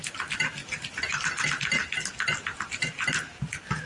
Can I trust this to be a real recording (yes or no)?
yes